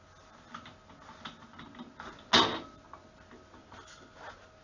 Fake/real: real